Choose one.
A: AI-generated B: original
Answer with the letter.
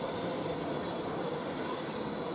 B